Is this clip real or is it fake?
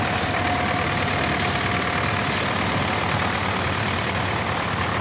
real